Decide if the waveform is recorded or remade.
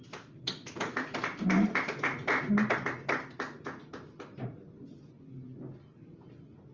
recorded